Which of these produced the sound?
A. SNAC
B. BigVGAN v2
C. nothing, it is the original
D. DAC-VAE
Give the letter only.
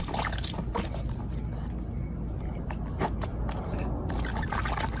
C